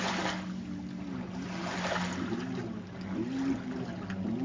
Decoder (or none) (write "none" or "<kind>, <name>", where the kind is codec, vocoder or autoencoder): none